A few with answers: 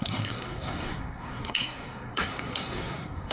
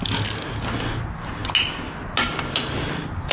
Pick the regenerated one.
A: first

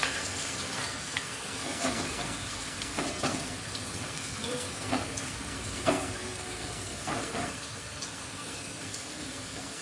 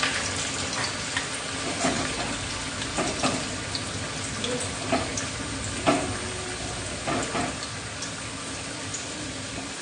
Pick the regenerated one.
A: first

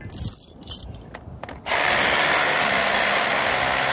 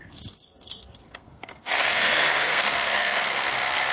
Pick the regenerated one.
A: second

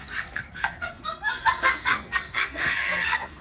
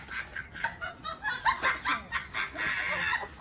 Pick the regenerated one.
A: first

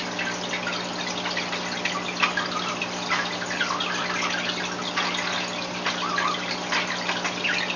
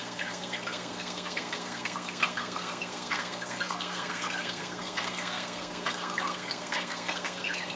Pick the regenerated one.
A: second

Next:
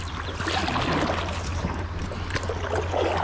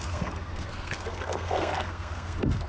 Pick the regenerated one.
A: second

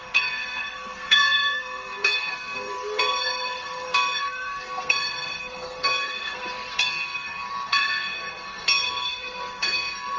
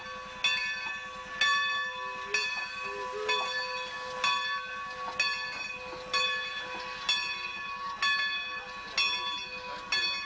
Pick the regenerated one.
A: first